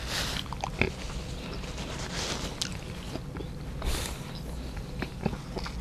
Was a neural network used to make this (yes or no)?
no